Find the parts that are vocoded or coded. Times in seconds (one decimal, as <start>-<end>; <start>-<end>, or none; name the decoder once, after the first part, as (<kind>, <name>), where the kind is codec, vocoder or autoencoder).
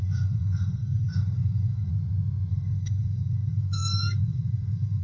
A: 0.0-1.9 (codec, SNAC); 2.5-5.0